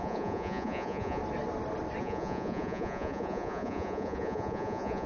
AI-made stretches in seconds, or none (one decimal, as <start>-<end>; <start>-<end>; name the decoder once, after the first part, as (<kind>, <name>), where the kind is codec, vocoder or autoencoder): 0.0-1.2 (vocoder, Vocos); 2.0-5.1